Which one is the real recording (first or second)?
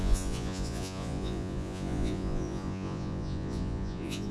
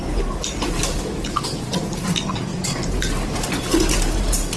second